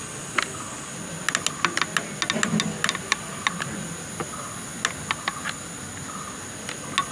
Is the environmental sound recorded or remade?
recorded